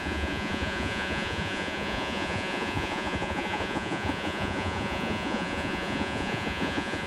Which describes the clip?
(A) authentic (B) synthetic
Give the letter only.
B